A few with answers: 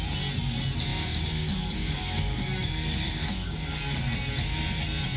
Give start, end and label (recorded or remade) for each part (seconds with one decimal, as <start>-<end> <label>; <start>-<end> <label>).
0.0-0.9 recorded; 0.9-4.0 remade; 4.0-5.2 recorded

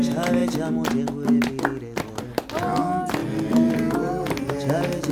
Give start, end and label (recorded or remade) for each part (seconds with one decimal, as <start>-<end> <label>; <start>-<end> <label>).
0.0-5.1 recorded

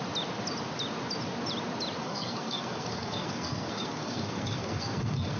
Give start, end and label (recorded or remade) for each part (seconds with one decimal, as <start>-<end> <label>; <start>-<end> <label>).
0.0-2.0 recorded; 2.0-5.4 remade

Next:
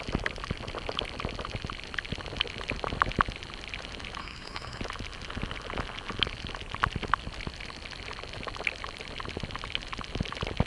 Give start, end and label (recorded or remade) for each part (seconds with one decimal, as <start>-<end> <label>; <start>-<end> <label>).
0.0-4.2 recorded; 4.2-4.8 remade; 4.8-10.7 recorded